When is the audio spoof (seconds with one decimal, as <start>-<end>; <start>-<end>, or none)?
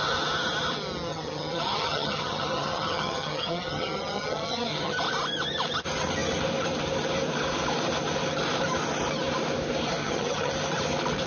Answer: 1.1-5.0; 10.0-10.5